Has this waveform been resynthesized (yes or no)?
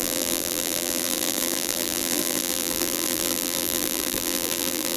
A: yes